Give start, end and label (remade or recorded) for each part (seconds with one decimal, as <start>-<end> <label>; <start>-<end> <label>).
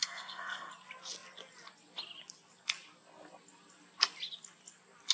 0.0-0.7 remade; 0.7-5.1 recorded